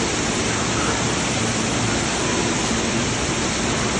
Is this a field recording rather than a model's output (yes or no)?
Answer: yes